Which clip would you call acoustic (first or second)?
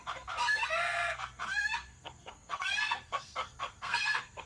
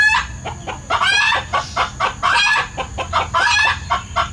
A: second